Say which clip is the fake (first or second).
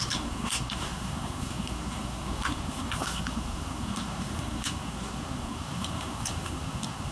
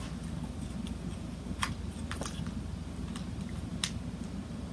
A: first